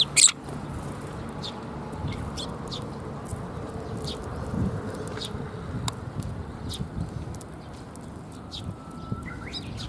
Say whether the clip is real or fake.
real